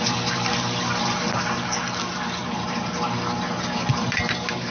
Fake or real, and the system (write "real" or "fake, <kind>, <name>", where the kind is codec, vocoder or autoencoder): real